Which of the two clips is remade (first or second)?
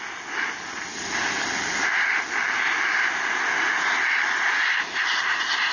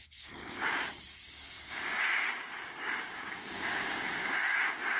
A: second